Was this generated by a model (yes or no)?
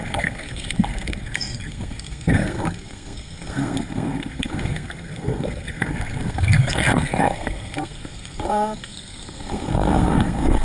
yes